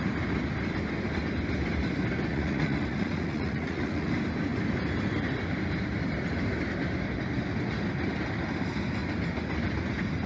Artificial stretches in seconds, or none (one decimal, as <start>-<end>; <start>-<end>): 2.3-4.1